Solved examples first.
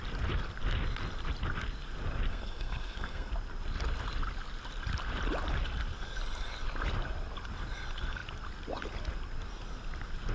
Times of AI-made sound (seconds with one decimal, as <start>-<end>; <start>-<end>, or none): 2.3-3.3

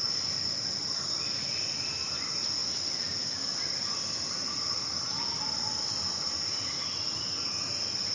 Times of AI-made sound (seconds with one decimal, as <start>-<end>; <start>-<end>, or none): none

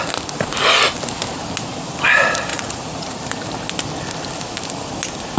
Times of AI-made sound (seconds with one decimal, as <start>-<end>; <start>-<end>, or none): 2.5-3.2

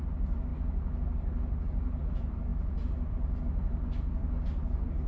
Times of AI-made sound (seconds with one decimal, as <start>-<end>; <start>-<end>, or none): none

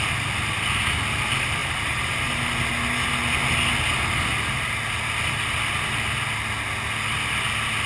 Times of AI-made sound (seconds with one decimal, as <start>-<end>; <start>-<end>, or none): 1.6-2.4